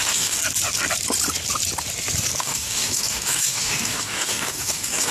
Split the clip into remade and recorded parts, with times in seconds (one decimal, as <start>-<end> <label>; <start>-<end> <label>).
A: 0.0-0.4 remade; 0.4-2.4 recorded; 2.4-5.1 remade

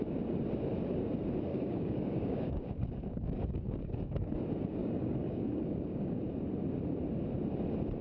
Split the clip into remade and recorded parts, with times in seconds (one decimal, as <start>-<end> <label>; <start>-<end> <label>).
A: 0.0-1.5 recorded; 1.5-4.3 remade; 4.3-4.8 recorded; 4.8-6.3 remade; 6.3-8.0 recorded

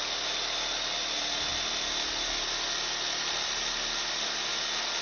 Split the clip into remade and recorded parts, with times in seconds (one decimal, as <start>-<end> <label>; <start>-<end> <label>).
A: 0.0-5.0 recorded

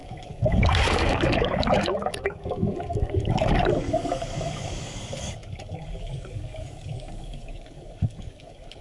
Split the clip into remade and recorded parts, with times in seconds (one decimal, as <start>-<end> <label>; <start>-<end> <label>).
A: 0.0-8.8 remade